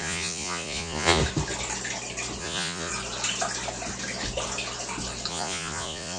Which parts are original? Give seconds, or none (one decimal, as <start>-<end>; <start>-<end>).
1.2-2.4; 2.9-5.3